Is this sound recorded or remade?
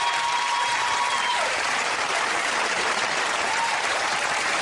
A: remade